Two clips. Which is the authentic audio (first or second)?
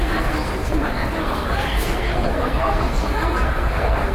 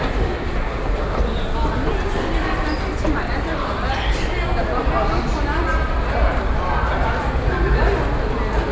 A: second